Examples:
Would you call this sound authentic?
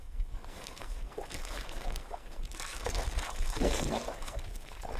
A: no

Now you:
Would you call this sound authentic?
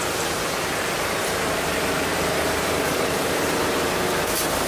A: no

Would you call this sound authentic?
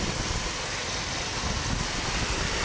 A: yes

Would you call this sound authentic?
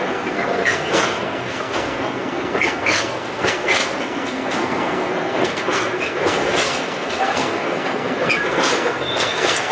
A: no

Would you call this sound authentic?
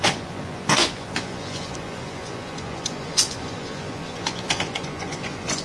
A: no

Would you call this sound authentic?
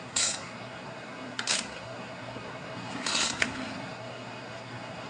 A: no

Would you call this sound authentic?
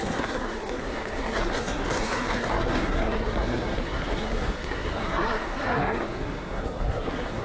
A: no